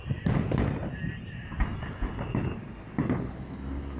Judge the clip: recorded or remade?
recorded